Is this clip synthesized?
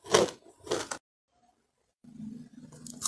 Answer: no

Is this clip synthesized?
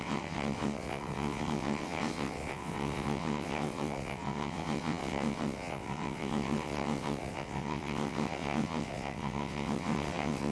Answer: yes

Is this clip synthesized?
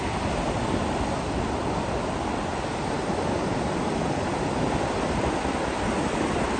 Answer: no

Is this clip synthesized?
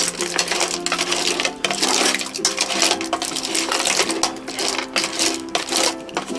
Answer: no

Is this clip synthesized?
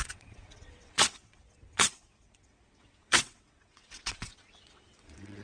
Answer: yes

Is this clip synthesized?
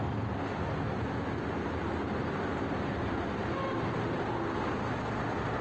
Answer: no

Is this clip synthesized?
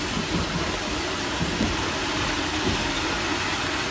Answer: no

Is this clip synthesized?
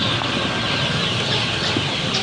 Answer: no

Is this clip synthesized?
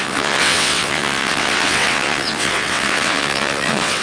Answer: yes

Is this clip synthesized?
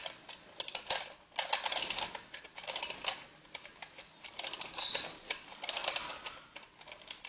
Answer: no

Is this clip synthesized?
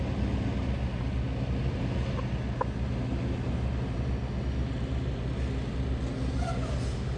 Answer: no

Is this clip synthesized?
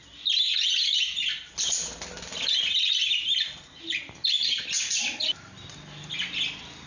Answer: no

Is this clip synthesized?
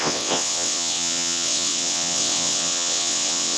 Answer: yes